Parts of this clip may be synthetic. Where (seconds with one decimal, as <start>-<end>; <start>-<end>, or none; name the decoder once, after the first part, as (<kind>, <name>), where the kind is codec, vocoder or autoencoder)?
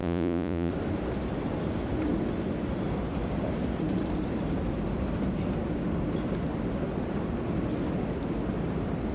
0.0-0.7 (vocoder, Vocos)